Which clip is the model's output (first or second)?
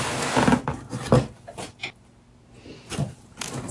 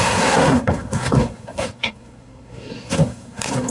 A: second